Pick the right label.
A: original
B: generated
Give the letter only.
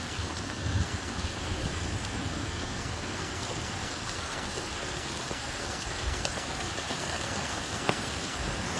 B